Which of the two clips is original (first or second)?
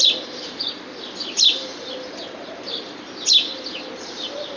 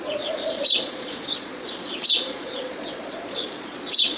first